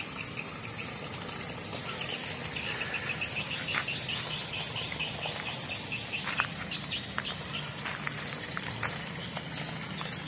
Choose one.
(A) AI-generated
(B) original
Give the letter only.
B